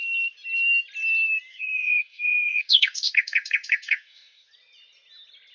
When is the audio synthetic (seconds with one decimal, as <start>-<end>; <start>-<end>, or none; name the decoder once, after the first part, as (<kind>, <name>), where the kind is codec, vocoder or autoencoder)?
1.5-4.5 (codec, DAC)